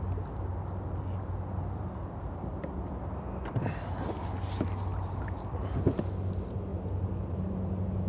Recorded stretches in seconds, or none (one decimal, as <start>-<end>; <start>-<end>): 0.0-8.1